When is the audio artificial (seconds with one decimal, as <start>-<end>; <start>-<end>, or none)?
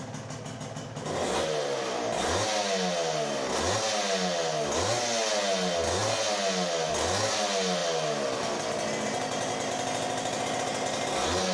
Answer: none